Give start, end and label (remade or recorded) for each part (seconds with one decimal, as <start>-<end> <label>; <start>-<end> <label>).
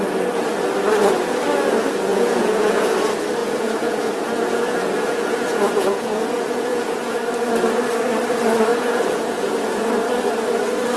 0.0-2.1 recorded; 2.1-2.9 remade; 2.9-3.4 recorded; 3.4-7.2 remade; 7.2-8.7 recorded; 8.7-9.9 remade; 9.9-11.0 recorded